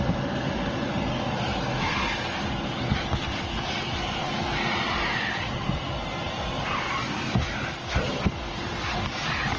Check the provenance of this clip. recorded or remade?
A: recorded